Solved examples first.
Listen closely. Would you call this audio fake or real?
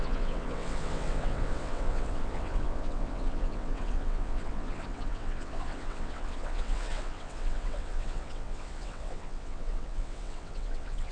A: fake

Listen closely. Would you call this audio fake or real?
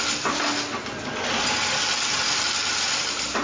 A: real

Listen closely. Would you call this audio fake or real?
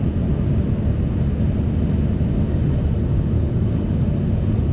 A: real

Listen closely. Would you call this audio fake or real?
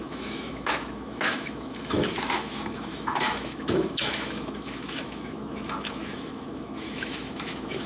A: fake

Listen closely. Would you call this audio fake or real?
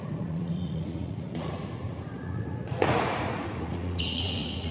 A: fake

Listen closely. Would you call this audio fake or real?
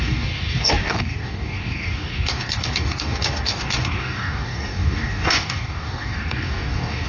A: fake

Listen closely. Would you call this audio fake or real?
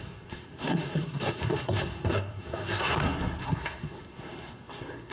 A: fake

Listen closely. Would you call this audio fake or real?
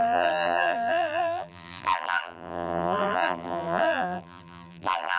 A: fake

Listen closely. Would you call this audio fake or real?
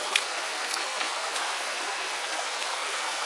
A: fake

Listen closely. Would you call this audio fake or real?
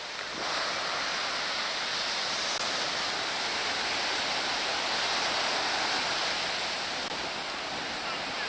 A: real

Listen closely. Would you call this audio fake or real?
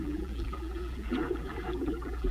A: fake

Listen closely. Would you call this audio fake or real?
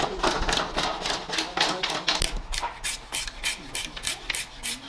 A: real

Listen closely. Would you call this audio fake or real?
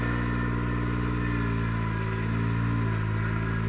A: real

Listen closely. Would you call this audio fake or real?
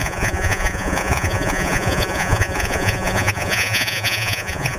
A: fake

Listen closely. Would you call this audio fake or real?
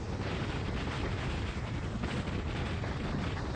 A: real